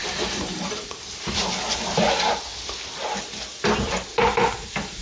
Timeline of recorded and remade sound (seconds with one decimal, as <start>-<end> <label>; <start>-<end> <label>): 0.0-5.0 recorded